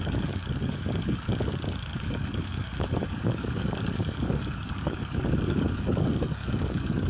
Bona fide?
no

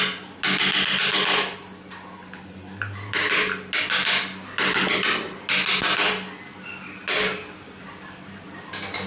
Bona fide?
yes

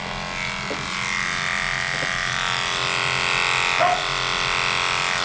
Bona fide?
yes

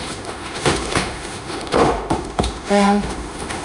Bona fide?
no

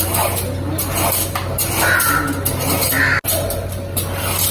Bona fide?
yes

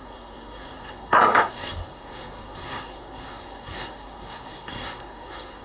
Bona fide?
no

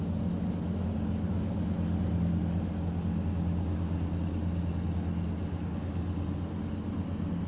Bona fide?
yes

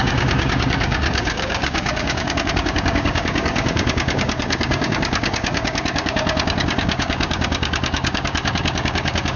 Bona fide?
no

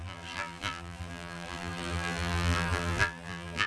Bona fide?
no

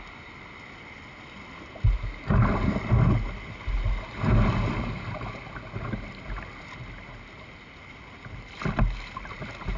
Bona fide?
yes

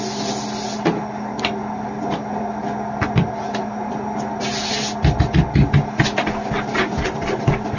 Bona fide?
yes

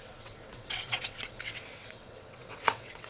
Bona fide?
no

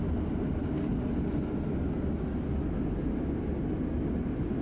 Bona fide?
yes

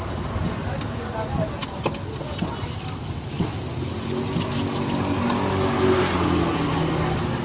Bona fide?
yes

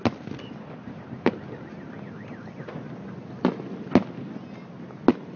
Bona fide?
yes